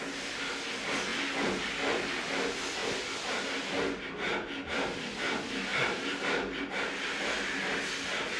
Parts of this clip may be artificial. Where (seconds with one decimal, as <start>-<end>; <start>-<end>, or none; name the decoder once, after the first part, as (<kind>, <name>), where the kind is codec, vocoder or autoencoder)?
none

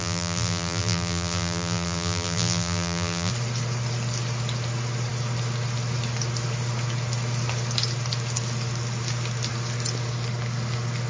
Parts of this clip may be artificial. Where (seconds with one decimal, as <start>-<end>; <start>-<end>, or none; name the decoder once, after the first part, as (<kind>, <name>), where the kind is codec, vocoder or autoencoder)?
0.0-3.3 (vocoder, BigVGAN v2)

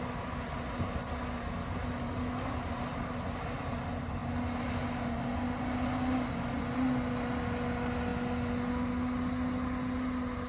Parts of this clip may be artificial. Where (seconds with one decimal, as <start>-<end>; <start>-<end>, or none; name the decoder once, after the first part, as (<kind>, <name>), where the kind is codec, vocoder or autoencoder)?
none

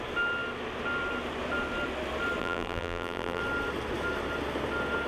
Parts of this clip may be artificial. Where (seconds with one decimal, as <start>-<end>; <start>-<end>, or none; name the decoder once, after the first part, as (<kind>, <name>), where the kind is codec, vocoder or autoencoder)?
2.4-3.4 (vocoder, BigVGAN v2)

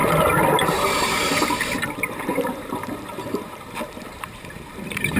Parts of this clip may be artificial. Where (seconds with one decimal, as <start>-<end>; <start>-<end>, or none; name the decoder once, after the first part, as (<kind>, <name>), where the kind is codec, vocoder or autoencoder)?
0.7-5.2 (vocoder, BigVGAN v2)

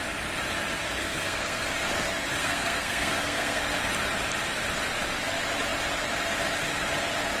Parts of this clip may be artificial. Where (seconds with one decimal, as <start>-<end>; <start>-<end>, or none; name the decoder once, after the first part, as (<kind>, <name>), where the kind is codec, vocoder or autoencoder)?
1.0-1.7 (codec, SNAC); 2.4-3.6

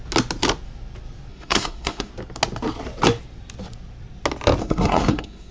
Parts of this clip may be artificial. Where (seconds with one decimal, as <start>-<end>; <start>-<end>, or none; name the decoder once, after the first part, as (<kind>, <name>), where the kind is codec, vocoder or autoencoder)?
1.3-2.1 (codec, SNAC); 4.6-5.5

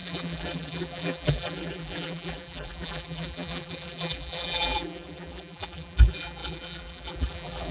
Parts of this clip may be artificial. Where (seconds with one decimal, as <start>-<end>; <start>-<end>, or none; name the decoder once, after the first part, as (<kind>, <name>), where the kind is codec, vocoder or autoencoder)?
0.0-7.7 (vocoder, BigVGAN v2)